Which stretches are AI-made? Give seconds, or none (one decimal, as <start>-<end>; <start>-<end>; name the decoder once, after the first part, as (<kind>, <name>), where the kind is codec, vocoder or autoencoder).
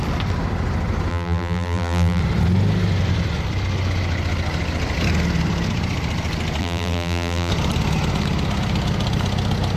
1.1-2.2 (vocoder, BigVGAN v2); 6.6-7.5